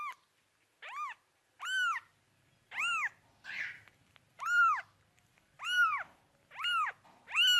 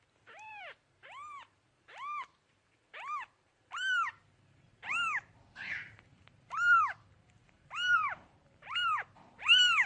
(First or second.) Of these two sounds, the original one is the first